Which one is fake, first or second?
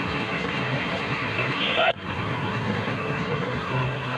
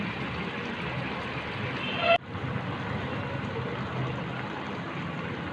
first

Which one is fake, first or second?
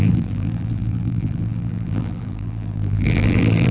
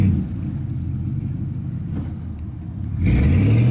first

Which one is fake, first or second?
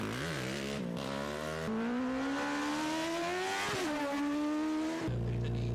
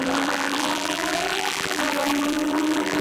second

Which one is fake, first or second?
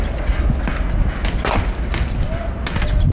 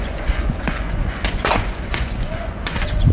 second